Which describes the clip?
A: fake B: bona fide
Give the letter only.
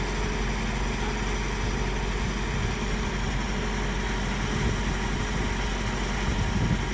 B